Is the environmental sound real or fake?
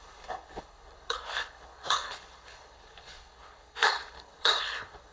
fake